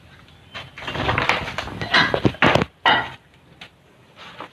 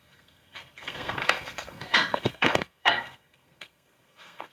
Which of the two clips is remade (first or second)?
second